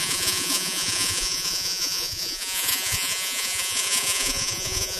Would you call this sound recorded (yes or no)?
no